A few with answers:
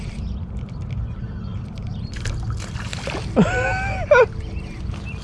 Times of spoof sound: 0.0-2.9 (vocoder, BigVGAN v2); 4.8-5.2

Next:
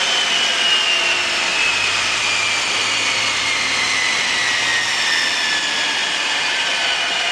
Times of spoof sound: 6.0-6.7 (vocoder, BigVGAN v2)

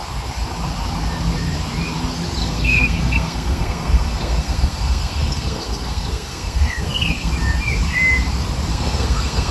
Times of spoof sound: 2.4-7.3 (codec, SNAC); 8.7-9.5